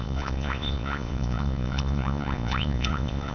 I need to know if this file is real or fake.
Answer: fake